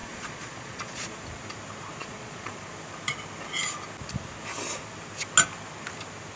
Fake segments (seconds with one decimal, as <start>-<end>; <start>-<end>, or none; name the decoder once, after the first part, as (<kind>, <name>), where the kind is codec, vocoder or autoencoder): 0.0-1.2 (vocoder, Vocos); 2.0-2.6